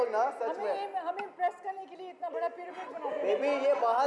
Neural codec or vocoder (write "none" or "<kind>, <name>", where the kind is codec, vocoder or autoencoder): none